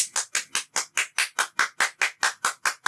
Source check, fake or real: real